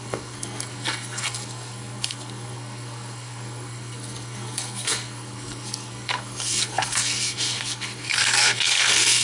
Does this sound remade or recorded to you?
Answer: remade